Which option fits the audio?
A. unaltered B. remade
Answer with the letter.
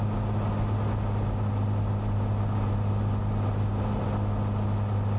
A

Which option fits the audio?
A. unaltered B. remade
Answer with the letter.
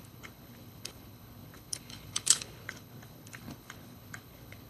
B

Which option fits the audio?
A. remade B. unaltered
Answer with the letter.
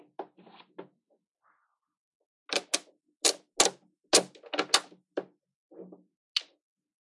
B